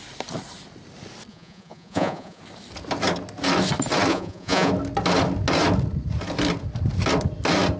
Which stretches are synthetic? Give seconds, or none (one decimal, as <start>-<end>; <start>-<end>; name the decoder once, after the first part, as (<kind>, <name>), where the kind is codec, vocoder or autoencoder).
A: 1.3-2.4 (vocoder, Vocos); 4.1-4.7